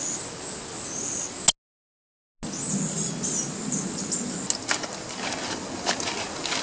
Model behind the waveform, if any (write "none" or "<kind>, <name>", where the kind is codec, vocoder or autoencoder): none